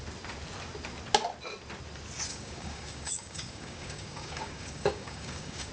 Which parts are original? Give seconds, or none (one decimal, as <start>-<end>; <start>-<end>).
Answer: 0.0-2.3